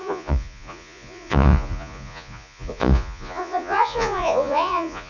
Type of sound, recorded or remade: remade